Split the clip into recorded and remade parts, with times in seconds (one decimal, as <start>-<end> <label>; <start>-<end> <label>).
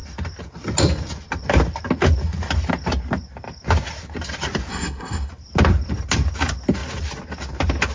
0.0-4.7 recorded; 4.7-5.3 remade; 5.3-7.9 recorded